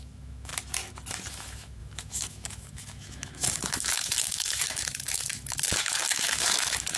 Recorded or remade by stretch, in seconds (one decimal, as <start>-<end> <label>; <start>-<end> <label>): 0.0-0.5 remade; 0.5-1.3 recorded; 1.3-7.0 remade